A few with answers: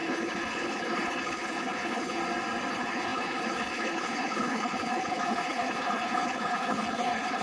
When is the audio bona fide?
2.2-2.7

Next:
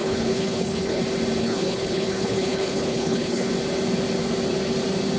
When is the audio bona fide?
1.0-1.4; 3.5-5.2

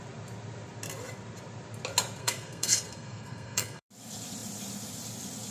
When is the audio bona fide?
0.0-2.2; 3.9-5.5